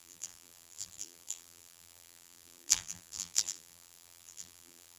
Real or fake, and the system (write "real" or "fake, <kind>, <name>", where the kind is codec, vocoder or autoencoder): fake, vocoder, BigVGAN v2